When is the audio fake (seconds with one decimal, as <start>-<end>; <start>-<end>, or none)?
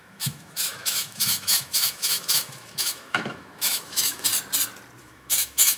0.0-4.3; 5.0-5.8